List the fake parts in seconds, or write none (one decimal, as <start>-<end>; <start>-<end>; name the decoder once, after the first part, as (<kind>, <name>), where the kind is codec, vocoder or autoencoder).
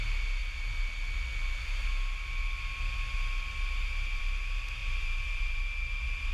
4.8-5.6 (vocoder, BigVGAN v2)